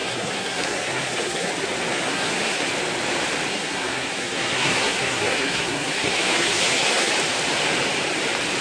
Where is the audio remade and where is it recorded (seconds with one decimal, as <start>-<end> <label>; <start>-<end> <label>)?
0.0-1.5 remade; 1.5-1.9 recorded; 1.9-2.7 remade; 2.7-3.5 recorded; 3.5-7.1 remade; 7.1-8.6 recorded